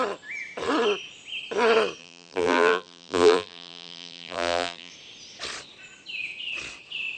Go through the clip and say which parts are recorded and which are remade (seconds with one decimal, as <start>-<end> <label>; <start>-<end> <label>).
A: 0.0-2.0 recorded; 2.0-4.9 remade; 4.9-7.2 recorded